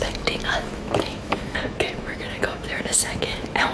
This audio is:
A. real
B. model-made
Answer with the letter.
B